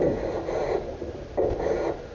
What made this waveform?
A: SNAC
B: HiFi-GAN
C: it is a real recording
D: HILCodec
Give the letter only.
C